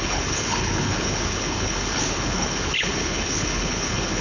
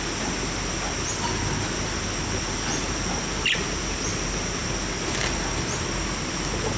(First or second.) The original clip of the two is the second